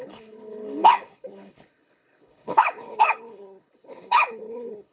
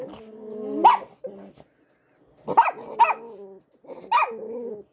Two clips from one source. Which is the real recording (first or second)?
second